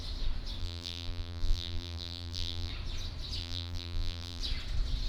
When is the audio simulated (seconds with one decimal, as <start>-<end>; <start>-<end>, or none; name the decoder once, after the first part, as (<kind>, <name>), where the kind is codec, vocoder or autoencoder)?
0.6-2.7 (vocoder, BigVGAN v2); 3.4-4.4